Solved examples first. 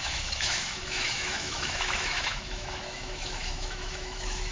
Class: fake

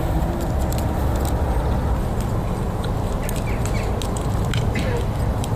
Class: real